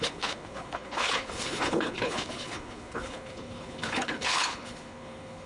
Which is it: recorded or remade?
remade